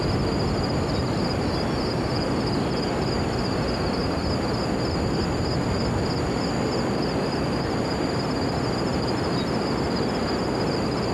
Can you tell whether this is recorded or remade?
recorded